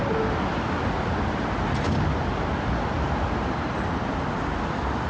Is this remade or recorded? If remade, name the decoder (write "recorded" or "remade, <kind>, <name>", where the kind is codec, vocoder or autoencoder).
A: recorded